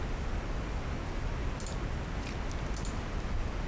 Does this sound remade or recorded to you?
recorded